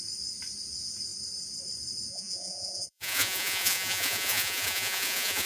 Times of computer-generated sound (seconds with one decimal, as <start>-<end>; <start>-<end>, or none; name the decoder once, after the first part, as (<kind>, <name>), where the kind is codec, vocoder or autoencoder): 2.1-5.5 (vocoder, Vocos)